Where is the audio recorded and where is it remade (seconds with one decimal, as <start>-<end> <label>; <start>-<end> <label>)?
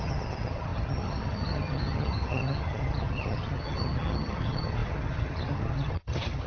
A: 0.0-6.5 remade